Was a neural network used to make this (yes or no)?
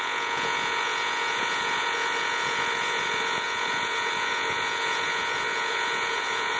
yes